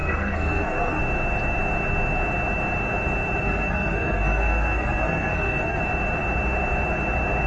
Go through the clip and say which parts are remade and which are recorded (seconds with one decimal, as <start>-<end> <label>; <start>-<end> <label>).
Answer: 0.0-1.0 remade; 1.0-3.4 recorded; 3.4-5.8 remade; 5.8-7.5 recorded